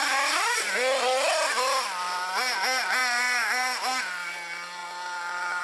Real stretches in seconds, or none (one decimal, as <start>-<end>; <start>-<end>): 0.0-5.6

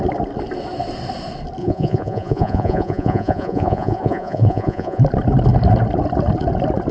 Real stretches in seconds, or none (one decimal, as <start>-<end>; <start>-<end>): 0.0-1.6; 5.0-6.9

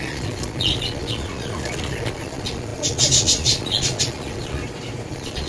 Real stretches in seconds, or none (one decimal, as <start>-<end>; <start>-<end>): 4.6-5.1